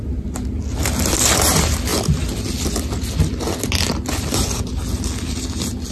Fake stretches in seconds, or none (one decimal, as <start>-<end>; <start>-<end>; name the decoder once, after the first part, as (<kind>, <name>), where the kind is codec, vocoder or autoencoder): none